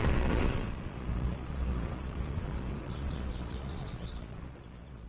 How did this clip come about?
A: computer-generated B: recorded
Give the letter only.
A